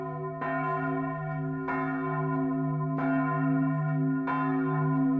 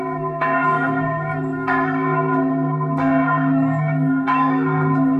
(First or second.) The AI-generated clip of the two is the second